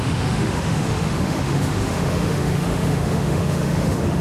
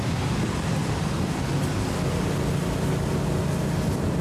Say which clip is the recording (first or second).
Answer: second